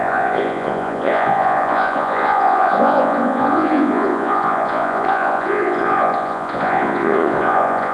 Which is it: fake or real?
fake